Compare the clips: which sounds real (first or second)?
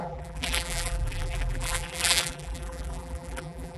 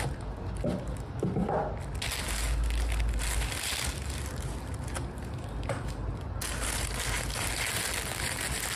second